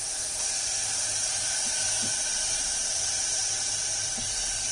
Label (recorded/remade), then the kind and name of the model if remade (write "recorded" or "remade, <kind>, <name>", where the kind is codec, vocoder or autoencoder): remade, vocoder, BigVGAN v2